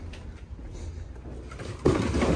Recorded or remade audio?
recorded